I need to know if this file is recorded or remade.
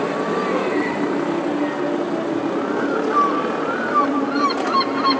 recorded